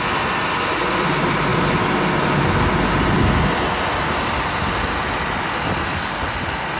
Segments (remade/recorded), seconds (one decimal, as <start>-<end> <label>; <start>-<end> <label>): 0.0-6.8 recorded